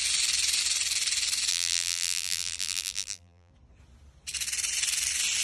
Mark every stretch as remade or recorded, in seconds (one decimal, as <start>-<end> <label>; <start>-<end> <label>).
0.0-1.5 recorded; 1.5-3.5 remade; 3.5-5.4 recorded